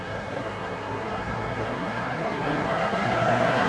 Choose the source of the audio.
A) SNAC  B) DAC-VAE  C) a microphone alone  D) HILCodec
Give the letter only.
A